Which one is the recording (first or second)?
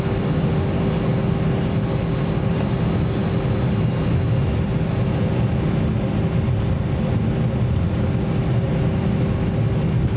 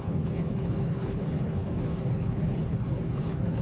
first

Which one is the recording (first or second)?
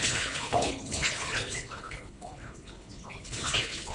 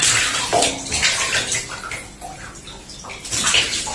second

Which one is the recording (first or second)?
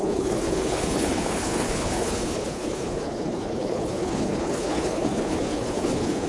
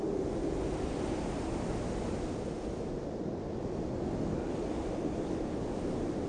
second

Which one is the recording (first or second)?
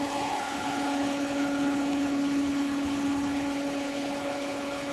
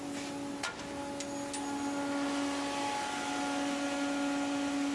second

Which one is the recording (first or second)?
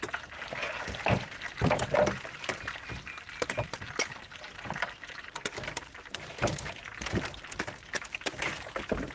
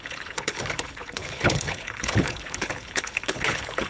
first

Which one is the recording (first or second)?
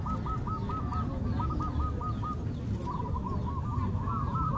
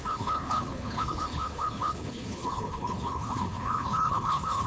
first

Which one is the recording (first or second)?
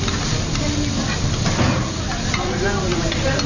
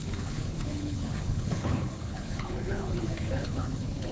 first